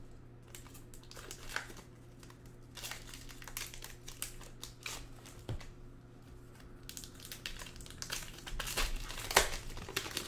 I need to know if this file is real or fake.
real